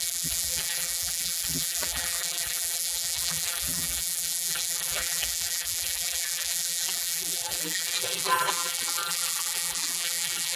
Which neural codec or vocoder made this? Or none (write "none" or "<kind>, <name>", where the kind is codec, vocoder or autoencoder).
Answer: vocoder, BigVGAN v2